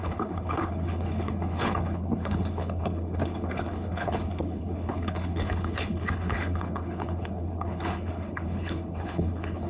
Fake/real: fake